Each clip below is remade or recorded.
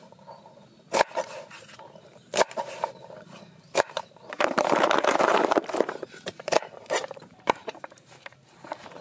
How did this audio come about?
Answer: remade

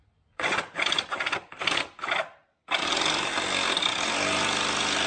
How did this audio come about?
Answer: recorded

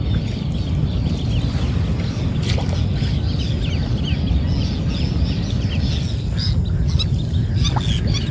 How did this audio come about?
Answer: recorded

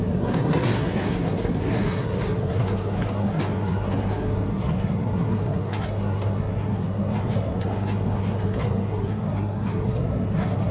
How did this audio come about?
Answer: remade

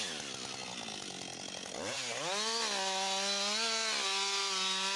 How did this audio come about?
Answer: recorded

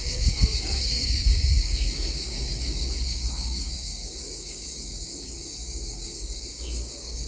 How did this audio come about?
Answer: remade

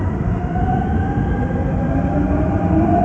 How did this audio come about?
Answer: remade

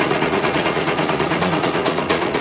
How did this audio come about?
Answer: remade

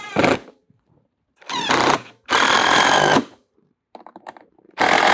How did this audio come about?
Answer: remade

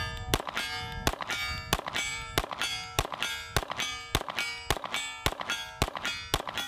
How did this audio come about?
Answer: recorded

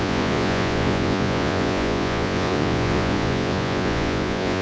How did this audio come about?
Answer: remade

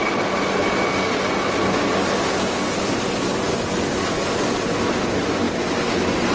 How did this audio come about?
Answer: recorded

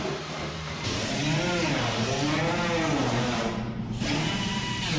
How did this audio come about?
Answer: remade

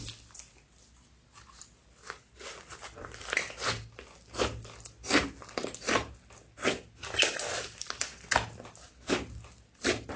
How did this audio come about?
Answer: recorded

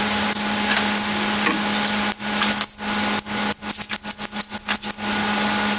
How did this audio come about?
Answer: recorded